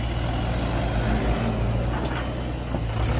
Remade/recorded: recorded